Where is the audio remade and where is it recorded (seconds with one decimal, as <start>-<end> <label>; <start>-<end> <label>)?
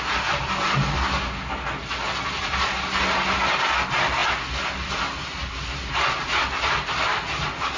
0.0-7.8 recorded